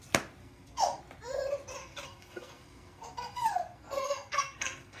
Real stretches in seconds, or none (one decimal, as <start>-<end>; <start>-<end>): 0.0-0.4; 1.0-1.8